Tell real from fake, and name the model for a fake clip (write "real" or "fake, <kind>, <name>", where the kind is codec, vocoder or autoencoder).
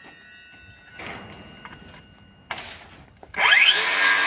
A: real